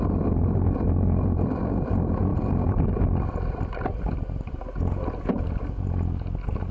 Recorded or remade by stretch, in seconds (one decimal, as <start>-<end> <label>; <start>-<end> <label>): 0.0-6.7 recorded